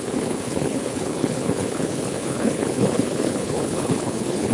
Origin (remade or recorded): remade